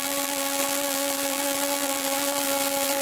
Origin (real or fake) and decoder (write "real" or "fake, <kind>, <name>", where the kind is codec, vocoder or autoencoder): fake, vocoder, BigVGAN v2